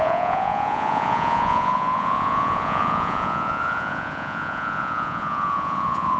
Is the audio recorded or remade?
remade